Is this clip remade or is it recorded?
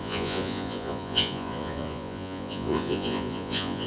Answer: remade